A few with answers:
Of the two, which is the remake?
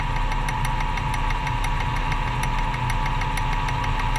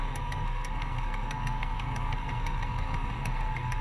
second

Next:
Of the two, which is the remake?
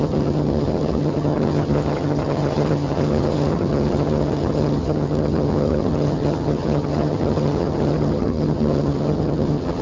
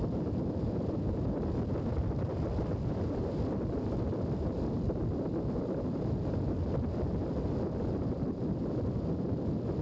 first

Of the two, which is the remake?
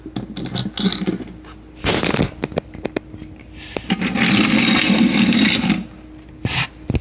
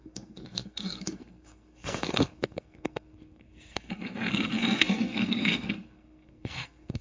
second